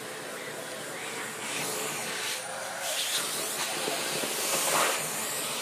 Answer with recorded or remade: recorded